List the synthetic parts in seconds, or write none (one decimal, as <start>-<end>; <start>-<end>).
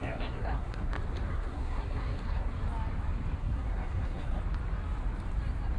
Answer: 0.0-0.9; 1.3-2.5; 3.4-4.4